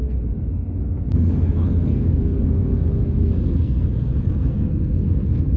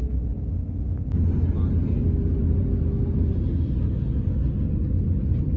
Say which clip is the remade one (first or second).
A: first